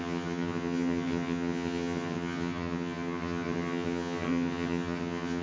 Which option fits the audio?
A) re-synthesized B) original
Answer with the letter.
A